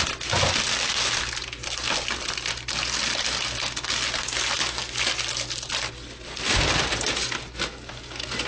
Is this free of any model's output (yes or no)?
yes